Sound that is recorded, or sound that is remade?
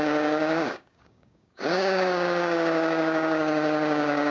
remade